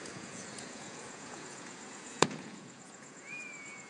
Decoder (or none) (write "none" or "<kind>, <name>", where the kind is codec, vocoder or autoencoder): vocoder, Vocos